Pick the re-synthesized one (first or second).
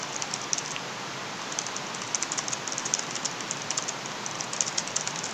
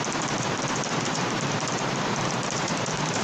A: second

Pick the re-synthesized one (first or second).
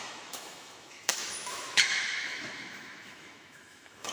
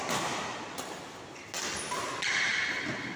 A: first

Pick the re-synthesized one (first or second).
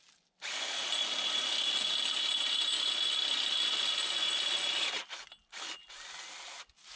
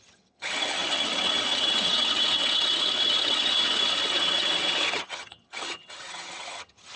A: second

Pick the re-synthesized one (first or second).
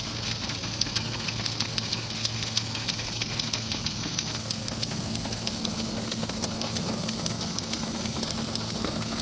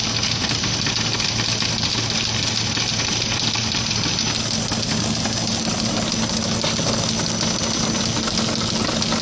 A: first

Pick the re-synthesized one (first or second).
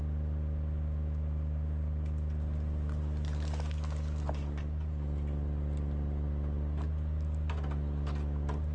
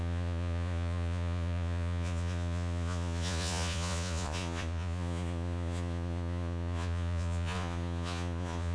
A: second